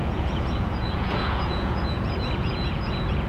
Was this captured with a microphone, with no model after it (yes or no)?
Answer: no